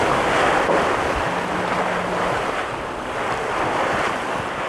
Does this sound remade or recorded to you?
recorded